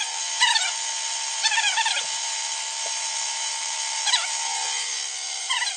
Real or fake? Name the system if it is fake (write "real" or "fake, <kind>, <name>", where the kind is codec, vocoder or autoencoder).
fake, vocoder, BigVGAN v2